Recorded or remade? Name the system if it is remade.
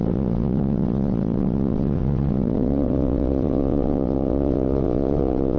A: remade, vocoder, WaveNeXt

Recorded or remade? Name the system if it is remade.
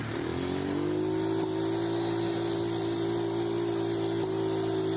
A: recorded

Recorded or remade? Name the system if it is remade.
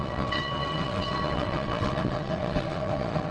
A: remade, vocoder, WaveNeXt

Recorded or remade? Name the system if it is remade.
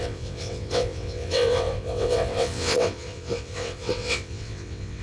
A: remade, vocoder, WaveNeXt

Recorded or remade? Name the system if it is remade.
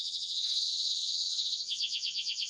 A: remade, vocoder, WaveNeXt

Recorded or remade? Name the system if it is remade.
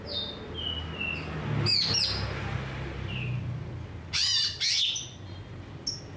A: recorded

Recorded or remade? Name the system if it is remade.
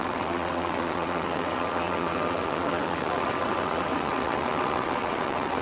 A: remade, vocoder, WaveNeXt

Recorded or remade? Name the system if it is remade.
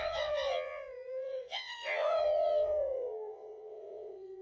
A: remade, vocoder, WaveNeXt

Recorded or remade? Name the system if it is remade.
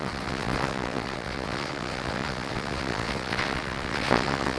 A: remade, vocoder, WaveNeXt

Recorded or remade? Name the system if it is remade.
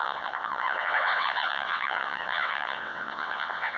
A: remade, vocoder, WaveNeXt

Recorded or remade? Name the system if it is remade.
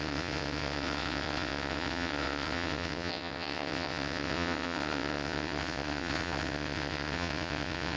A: remade, vocoder, WaveNeXt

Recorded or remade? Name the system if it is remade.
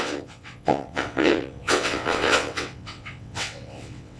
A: remade, vocoder, WaveNeXt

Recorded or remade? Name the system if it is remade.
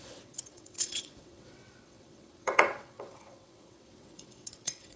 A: remade, vocoder, WaveNeXt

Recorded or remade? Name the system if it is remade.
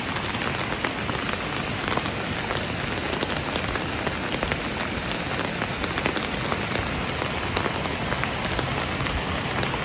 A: recorded